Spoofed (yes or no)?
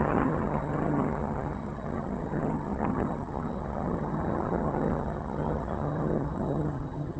yes